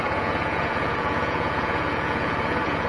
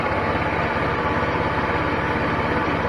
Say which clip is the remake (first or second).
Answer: first